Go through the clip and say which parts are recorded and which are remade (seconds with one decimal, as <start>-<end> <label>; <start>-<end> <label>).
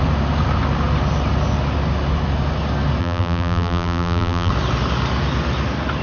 0.0-3.0 recorded; 3.0-4.5 remade; 4.5-6.0 recorded